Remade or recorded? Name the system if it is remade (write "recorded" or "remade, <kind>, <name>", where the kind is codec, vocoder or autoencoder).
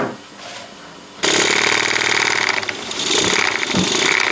recorded